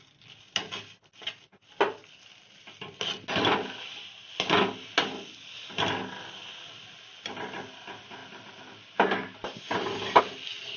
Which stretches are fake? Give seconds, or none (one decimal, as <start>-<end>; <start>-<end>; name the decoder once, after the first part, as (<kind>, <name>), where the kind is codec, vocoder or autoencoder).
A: none